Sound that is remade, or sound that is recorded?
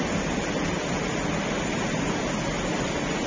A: recorded